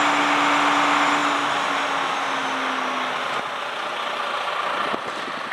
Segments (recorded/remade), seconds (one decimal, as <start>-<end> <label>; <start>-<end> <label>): 0.0-5.5 recorded